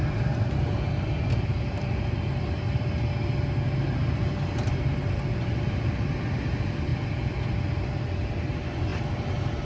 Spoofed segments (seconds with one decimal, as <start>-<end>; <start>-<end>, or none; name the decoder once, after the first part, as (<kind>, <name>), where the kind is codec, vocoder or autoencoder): 0.0-2.9 (vocoder, BigVGAN v2); 6.9-8.4